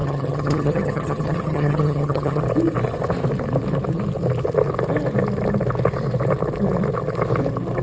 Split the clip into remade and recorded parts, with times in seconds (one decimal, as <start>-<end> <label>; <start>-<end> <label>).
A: 0.0-2.4 remade; 2.4-7.8 recorded